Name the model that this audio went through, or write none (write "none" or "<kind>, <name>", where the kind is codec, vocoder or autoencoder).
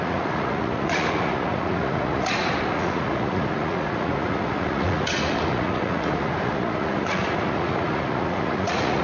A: vocoder, Vocos